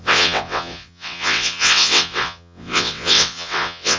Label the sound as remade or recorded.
remade